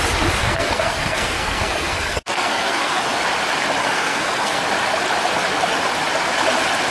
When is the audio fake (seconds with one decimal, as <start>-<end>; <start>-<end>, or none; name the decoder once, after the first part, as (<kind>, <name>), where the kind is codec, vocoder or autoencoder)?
0.4-3.0 (codec, SNAC); 3.8-4.6